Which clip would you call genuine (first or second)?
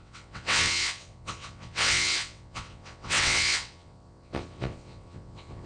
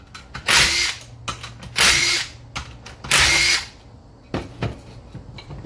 second